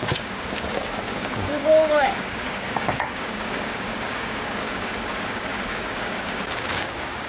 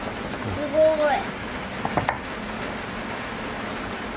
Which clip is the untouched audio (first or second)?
second